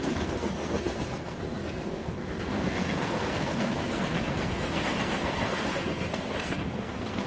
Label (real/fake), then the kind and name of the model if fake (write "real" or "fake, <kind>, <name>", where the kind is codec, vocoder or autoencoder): fake, codec, SNAC